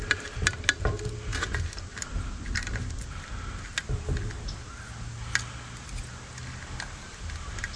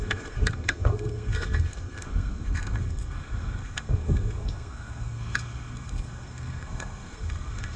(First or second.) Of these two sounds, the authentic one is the first